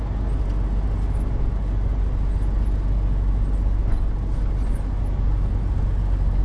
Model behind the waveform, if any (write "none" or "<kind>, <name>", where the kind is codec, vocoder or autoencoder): none